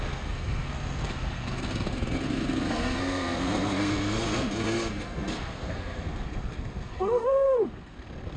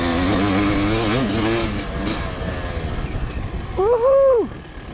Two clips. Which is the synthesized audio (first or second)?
first